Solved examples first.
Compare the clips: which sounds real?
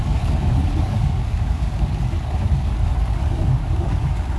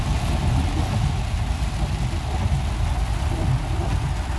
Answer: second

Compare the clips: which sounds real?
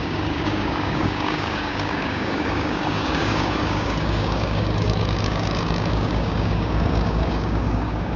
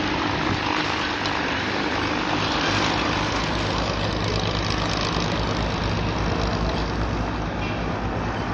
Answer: second